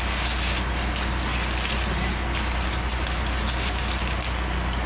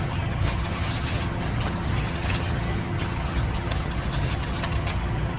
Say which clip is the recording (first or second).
first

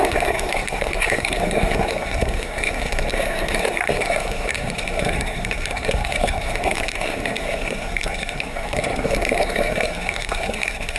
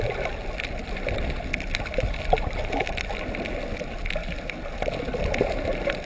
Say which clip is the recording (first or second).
second